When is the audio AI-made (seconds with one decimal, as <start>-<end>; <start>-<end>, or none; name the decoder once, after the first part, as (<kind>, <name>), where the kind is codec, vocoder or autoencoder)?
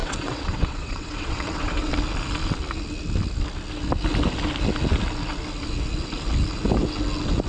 0.0-1.9 (vocoder, WaveNeXt)